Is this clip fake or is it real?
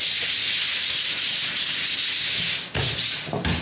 real